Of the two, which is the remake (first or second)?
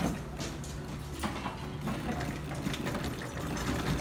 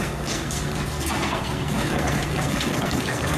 second